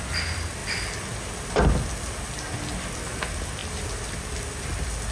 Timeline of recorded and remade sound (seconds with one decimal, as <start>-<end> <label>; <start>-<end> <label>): 0.0-3.6 recorded; 3.6-4.3 remade; 4.3-5.1 recorded